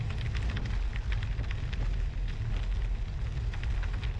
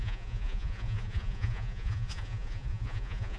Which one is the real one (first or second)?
first